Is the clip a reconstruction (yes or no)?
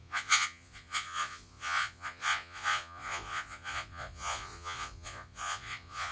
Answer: yes